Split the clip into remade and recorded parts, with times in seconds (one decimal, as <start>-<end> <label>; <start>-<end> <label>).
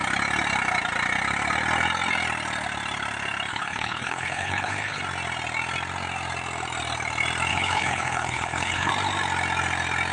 0.0-3.5 recorded; 3.5-5.0 remade; 5.0-7.5 recorded; 7.5-8.9 remade; 8.9-10.1 recorded